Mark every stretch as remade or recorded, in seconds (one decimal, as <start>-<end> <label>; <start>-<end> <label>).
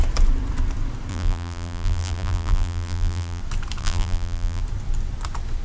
0.0-1.1 recorded; 1.1-3.4 remade; 3.4-3.8 recorded; 3.8-4.6 remade; 4.6-5.6 recorded